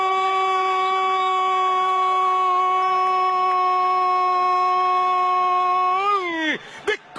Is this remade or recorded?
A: recorded